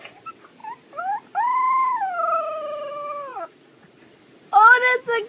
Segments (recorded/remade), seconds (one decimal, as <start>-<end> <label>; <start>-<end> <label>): 0.0-3.3 recorded; 3.3-4.0 remade; 4.0-5.3 recorded